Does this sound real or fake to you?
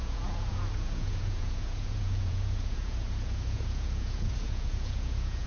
fake